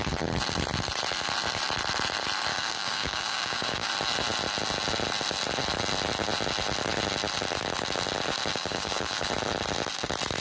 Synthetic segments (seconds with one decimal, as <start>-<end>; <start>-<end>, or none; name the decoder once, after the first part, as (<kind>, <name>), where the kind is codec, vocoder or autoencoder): 2.5-3.9 (codec, DAC); 8.5-9.3